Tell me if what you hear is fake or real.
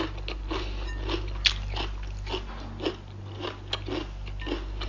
real